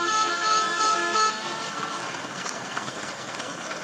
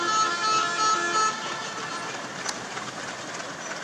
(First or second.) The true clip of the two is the second